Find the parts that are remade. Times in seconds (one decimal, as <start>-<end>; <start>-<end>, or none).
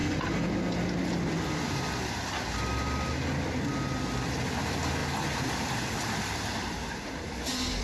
none